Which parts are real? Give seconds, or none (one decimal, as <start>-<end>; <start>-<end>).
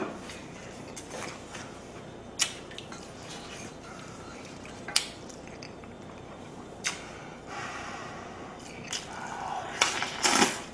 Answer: 0.0-0.4; 1.9-4.3; 7.2-10.7